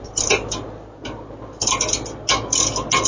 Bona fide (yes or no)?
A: yes